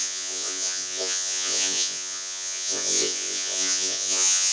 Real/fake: fake